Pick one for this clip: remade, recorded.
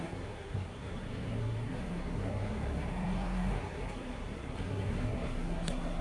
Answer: remade